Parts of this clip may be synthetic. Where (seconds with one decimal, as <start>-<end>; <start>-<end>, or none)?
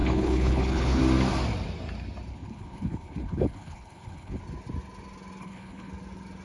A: 0.0-1.0; 2.3-4.4; 5.4-5.9